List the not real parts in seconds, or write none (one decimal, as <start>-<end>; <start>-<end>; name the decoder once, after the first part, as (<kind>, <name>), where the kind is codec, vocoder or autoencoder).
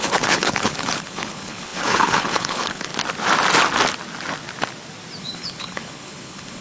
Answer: 0.0-2.9 (codec, HILCodec); 5.2-6.6